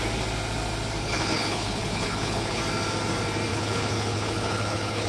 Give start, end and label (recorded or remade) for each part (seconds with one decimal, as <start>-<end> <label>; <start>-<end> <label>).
0.0-1.0 recorded; 1.0-2.6 remade; 2.6-3.5 recorded; 3.5-5.1 remade